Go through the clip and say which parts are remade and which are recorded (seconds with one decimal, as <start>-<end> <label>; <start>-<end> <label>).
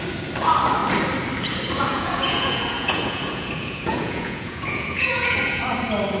0.0-1.9 recorded; 1.9-5.6 remade; 5.6-6.2 recorded